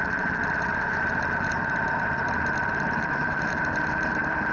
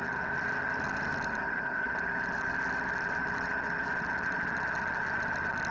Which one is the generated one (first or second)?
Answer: first